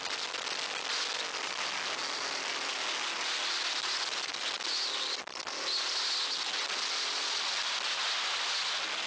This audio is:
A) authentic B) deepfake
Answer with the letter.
A